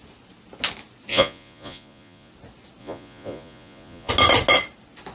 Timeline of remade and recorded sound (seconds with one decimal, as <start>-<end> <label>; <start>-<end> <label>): 0.0-1.1 recorded; 1.1-2.3 remade; 2.3-2.8 recorded; 2.8-4.1 remade; 4.1-5.1 recorded